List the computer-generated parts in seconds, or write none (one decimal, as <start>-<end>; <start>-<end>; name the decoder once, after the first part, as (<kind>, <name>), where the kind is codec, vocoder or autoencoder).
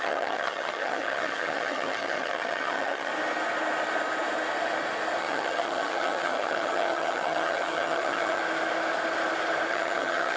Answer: 0.0-3.1 (vocoder, HiFi-GAN); 5.2-8.4; 9.7-10.4